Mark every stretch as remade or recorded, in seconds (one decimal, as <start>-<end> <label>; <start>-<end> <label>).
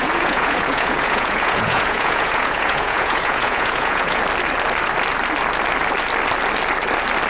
0.0-4.2 remade; 4.2-7.3 recorded